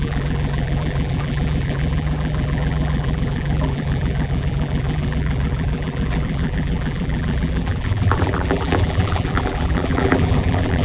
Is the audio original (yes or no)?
no